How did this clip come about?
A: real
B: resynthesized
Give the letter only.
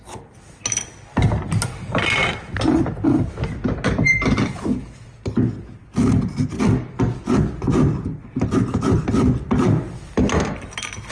A